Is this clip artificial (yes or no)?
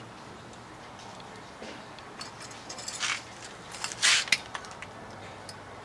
no